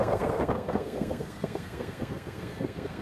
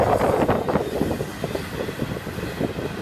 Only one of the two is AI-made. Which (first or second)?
first